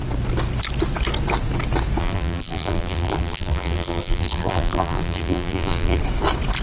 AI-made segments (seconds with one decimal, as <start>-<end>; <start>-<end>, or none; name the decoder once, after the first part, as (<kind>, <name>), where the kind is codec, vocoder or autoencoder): 2.0-6.0 (vocoder, BigVGAN v2)